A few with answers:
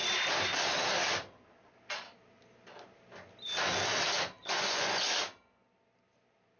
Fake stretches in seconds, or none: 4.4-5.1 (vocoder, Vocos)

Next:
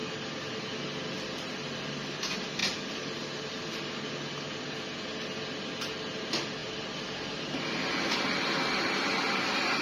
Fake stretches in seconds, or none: none

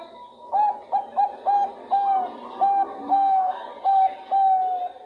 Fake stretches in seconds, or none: 3.1-3.7 (codec, SNAC)

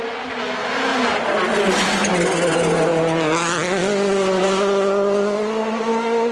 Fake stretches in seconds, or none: none

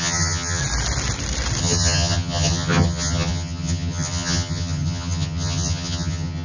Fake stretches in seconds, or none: 0.0-0.6 (vocoder, HiFi-GAN); 1.6-6.4

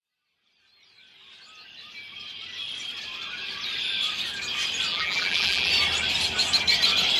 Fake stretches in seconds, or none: 4.9-5.7 (vocoder, BigVGAN v2)

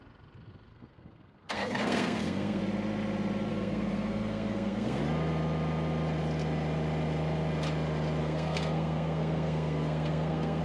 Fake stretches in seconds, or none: 0.7-2.6 (codec, SNAC); 3.5-5.0; 8.2-10.6